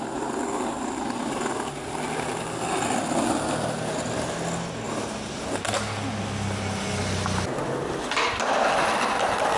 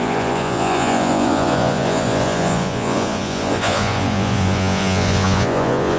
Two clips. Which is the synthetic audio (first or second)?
second